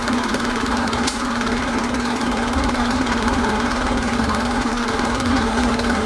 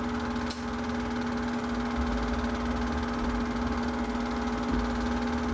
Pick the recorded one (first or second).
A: second